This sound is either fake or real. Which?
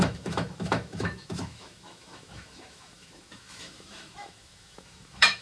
fake